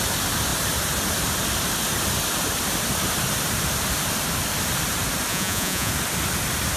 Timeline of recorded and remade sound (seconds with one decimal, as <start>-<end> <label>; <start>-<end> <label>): 0.0-5.3 recorded; 5.3-5.9 remade; 5.9-6.8 recorded